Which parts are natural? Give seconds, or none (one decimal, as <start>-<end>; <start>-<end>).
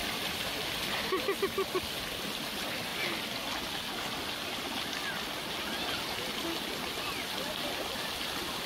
0.6-8.7